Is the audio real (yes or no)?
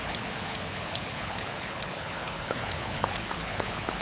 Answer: no